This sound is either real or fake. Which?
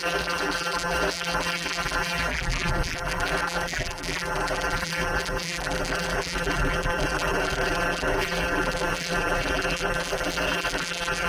fake